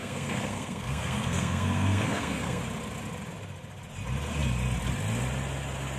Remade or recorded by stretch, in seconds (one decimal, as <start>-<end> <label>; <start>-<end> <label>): 0.0-2.6 remade; 2.6-6.0 recorded